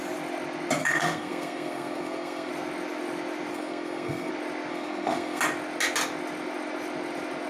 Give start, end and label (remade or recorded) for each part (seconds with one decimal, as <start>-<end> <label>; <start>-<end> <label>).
0.0-0.8 recorded; 0.8-2.5 remade; 2.5-3.5 recorded; 3.5-4.3 remade; 4.3-4.7 recorded; 4.7-5.4 remade; 5.4-7.5 recorded